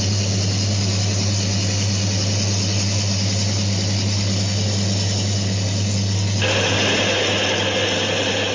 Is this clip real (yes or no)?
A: yes